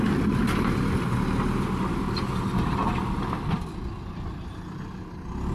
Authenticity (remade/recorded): recorded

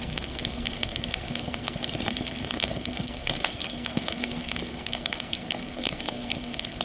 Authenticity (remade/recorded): remade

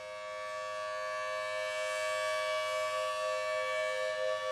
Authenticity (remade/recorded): recorded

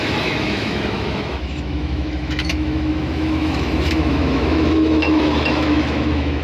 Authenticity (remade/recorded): remade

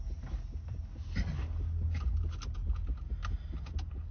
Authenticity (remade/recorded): recorded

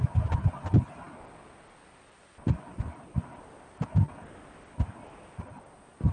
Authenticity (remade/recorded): recorded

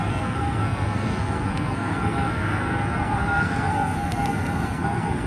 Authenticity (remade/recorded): remade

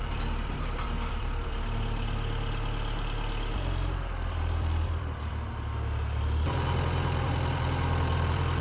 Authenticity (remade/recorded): remade